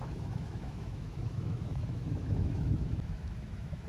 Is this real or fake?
fake